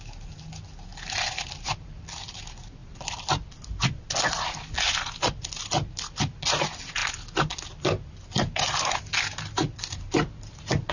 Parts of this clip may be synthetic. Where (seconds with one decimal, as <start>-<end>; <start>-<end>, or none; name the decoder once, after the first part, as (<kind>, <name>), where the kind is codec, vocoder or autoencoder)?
0.9-2.2 (vocoder, BigVGAN v2)